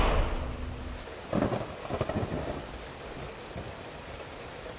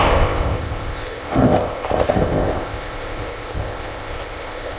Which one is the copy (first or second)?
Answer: second